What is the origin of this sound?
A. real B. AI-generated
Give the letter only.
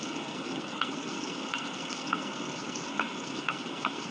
B